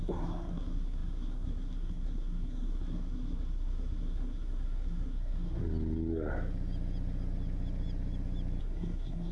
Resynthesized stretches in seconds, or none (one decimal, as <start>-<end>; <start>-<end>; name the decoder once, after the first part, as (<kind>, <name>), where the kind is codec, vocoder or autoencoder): 0.0-5.6 (codec, SNAC); 8.6-9.3